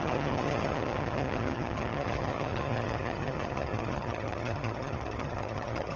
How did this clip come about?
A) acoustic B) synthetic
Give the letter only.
B